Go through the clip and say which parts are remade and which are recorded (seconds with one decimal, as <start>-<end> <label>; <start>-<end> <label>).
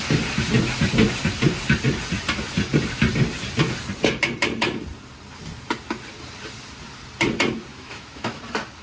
0.0-7.7 recorded; 7.7-8.4 remade; 8.4-8.8 recorded